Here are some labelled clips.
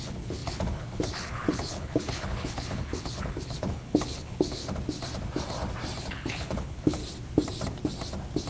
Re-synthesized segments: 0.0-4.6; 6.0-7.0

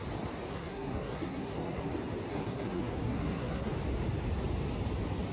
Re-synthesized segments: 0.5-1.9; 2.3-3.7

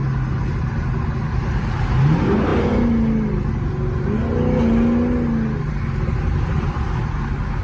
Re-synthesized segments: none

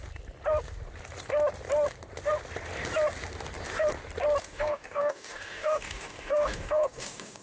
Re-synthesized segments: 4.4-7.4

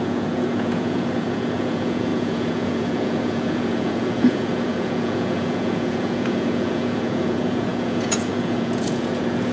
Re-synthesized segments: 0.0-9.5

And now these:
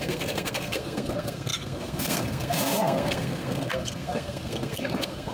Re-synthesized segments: 0.0-5.3

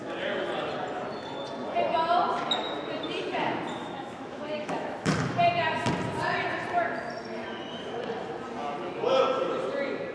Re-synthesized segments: 3.8-5.1